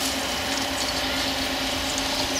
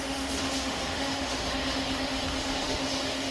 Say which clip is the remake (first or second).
second